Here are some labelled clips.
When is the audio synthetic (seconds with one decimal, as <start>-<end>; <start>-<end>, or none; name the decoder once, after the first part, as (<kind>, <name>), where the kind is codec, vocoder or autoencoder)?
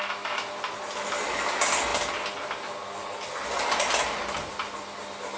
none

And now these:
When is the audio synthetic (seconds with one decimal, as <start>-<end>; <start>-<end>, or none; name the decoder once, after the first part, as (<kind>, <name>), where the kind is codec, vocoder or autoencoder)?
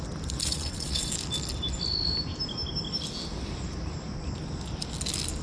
0.4-1.1 (vocoder, WaveNeXt)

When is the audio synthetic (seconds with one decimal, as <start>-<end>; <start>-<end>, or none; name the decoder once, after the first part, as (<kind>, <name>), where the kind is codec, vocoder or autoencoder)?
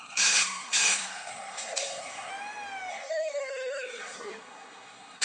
0.0-2.3 (codec, SNAC); 2.9-5.2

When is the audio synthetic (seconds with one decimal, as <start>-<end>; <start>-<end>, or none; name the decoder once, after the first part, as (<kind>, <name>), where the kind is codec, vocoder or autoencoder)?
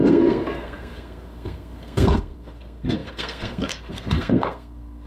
0.0-5.1 (codec, SNAC)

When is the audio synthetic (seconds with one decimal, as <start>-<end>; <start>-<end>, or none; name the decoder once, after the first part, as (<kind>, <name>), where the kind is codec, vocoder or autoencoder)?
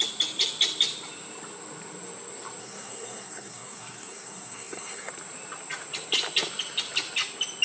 2.6-5.1 (codec, SNAC)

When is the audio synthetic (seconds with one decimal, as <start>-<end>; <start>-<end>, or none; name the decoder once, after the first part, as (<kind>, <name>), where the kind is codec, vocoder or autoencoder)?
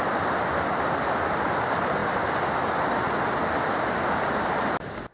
none